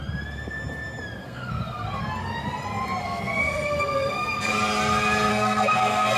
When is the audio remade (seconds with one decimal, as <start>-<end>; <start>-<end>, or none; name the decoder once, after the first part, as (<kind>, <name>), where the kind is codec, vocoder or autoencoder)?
1.2-2.0 (codec, SNAC); 3.0-4.5; 5.3-6.2

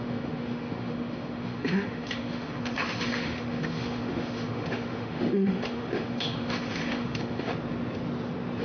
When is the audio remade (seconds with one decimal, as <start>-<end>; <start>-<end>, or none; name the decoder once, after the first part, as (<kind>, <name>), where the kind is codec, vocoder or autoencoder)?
0.0-7.5 (autoencoder, DAC-VAE)